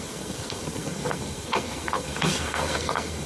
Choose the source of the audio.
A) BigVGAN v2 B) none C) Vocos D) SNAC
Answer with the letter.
D